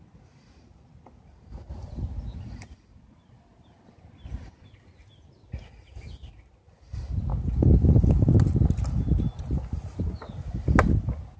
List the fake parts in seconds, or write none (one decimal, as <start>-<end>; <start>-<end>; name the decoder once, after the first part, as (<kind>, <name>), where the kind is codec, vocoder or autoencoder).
3.5-4.6 (vocoder, BigVGAN v2)